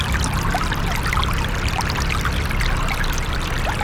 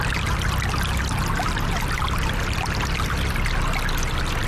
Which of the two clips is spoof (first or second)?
first